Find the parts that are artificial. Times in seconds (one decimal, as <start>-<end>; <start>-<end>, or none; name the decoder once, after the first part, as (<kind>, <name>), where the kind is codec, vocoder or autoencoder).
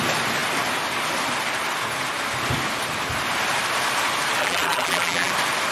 4.4-5.3 (vocoder, BigVGAN v2)